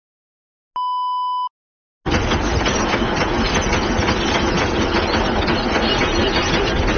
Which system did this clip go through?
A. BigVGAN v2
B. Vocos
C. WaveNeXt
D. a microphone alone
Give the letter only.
D